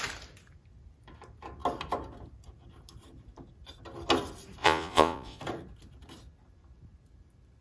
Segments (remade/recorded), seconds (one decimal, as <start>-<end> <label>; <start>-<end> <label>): 0.0-4.6 recorded; 4.6-5.4 remade; 5.4-7.6 recorded